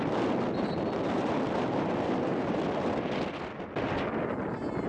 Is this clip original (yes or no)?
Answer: yes